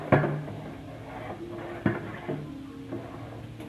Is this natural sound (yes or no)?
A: yes